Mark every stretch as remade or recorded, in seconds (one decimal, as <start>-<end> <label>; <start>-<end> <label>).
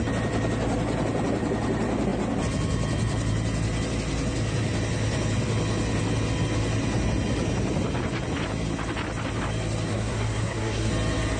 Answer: 0.0-9.9 recorded; 9.9-10.9 remade; 10.9-11.4 recorded